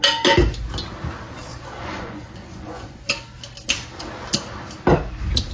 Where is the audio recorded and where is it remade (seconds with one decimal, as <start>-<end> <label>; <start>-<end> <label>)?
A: 0.0-1.5 recorded; 1.5-3.1 remade; 3.1-5.5 recorded